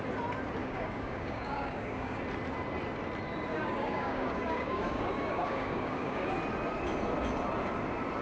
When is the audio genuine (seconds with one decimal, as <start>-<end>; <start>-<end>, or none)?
0.0-0.6; 2.2-3.5; 6.3-8.2